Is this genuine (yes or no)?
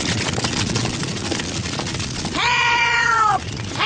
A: no